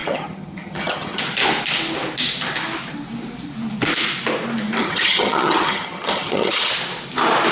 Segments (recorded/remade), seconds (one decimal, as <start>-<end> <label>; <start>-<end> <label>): 0.0-1.2 remade; 1.2-4.8 recorded; 4.8-6.7 remade; 6.7-7.5 recorded